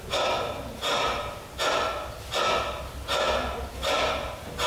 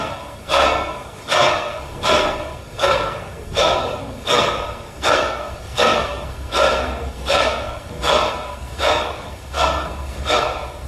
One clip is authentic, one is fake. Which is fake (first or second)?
second